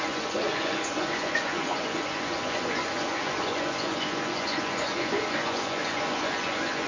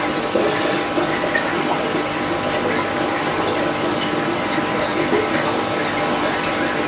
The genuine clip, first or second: second